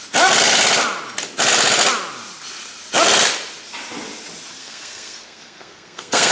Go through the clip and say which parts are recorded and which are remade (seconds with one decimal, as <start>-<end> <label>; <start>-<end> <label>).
0.0-4.6 recorded; 4.6-6.3 remade